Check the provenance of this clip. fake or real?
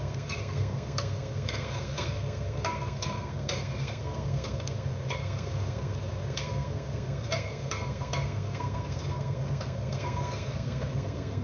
fake